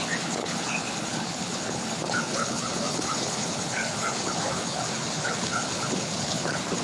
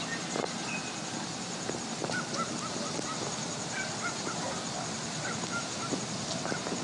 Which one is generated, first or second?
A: first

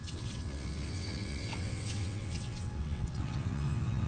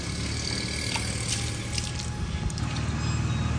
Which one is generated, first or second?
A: first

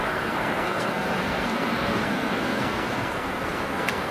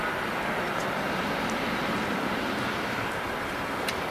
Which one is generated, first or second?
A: first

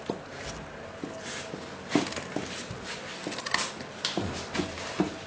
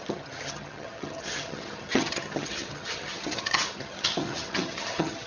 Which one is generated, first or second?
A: second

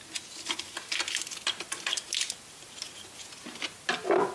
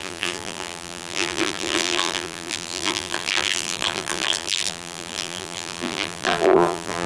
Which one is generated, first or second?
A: second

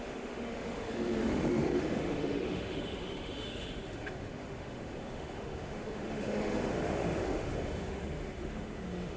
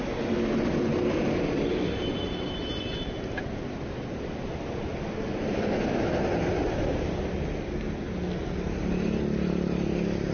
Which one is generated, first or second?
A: first